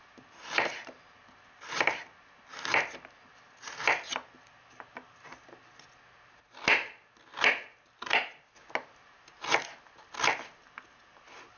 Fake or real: real